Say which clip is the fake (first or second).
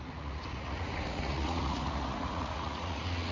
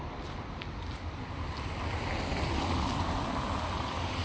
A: first